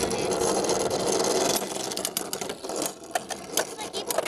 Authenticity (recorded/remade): recorded